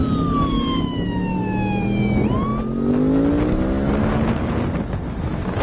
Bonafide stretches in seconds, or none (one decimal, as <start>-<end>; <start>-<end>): 0.0-5.6